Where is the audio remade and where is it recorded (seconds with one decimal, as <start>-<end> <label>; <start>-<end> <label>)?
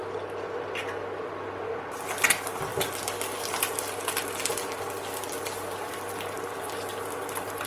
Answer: 0.0-7.7 recorded